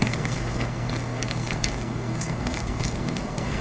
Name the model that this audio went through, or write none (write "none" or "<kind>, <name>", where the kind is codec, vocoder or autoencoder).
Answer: codec, SNAC